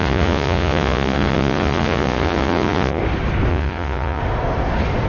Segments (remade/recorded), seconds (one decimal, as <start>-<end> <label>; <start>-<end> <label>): 0.0-3.0 remade; 3.0-3.5 recorded; 3.5-4.2 remade; 4.2-5.1 recorded